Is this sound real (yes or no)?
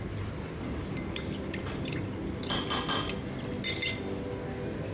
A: yes